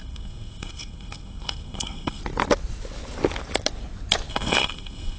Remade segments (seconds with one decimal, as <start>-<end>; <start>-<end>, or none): 0.0-2.2; 4.3-5.2